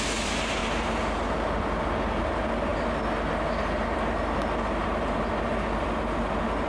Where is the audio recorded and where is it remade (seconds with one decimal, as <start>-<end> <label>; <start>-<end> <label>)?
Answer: 0.0-6.7 recorded